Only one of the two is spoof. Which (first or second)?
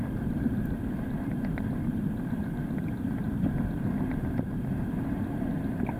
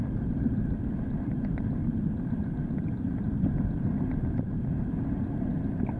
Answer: second